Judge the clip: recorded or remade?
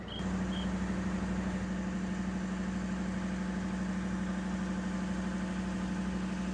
recorded